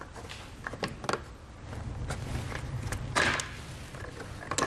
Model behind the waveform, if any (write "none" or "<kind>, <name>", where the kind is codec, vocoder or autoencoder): none